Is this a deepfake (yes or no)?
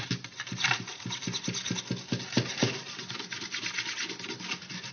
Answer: no